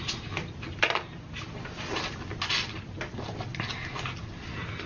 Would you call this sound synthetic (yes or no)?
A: no